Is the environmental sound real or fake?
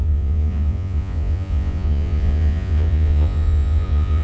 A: fake